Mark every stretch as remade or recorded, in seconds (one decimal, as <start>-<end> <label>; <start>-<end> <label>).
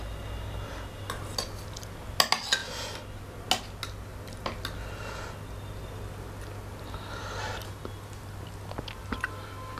0.0-9.8 recorded